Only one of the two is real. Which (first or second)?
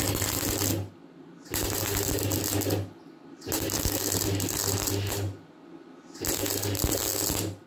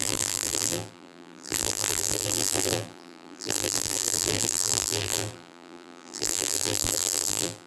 first